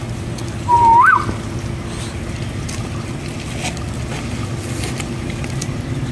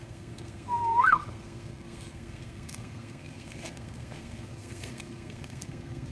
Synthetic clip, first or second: second